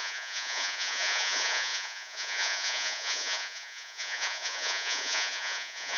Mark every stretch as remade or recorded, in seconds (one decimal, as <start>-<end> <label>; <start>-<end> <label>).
0.0-6.0 remade

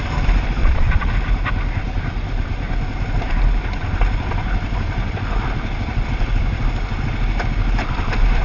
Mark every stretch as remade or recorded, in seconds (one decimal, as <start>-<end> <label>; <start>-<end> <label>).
0.0-0.6 recorded; 0.6-1.1 remade; 1.1-8.4 recorded

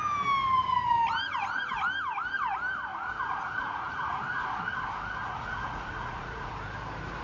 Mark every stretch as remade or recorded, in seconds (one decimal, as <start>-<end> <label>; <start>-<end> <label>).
0.0-2.9 recorded; 2.9-4.2 remade; 4.2-5.2 recorded; 5.2-6.5 remade; 6.5-7.2 recorded

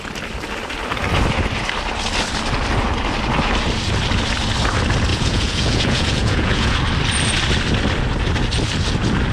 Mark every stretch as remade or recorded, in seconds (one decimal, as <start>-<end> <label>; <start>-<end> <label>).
0.0-5.1 recorded; 5.1-6.8 remade; 6.8-9.3 recorded

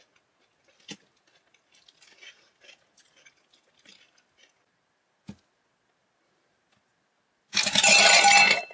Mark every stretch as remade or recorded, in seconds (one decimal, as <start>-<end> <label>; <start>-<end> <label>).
0.0-8.7 recorded

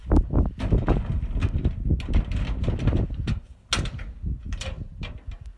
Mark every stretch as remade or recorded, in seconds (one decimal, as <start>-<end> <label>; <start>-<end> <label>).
0.0-5.6 recorded

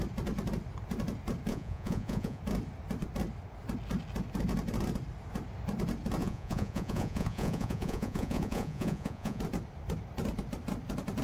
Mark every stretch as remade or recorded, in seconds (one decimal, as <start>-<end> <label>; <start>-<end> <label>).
0.0-1.5 recorded; 1.5-2.4 remade; 2.4-6.2 recorded; 6.2-9.4 remade; 9.4-11.2 recorded